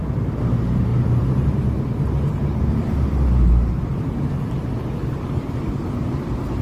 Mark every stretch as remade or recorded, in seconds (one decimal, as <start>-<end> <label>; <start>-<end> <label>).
0.0-0.9 recorded; 0.9-4.5 remade; 4.5-6.6 recorded